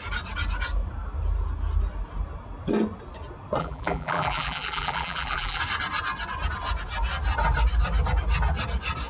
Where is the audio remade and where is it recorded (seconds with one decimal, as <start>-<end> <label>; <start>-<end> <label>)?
0.0-3.6 recorded; 3.6-5.6 remade; 5.6-9.1 recorded